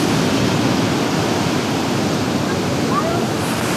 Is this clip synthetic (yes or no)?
no